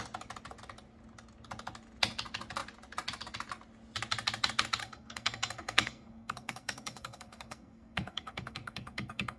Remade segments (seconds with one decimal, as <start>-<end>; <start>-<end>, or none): 4.8-9.4